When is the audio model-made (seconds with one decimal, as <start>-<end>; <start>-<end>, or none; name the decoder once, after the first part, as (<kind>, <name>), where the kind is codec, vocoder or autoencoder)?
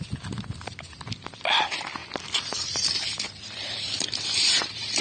2.0-5.0 (vocoder, BigVGAN v2)